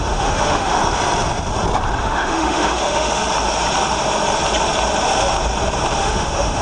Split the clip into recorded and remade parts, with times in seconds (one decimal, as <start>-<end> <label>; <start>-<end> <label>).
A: 0.0-0.8 remade; 0.8-2.0 recorded; 2.0-3.2 remade; 3.2-6.0 recorded; 6.0-6.6 remade